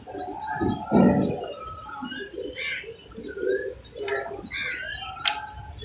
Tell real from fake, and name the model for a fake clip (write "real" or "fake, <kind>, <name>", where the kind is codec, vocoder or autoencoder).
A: real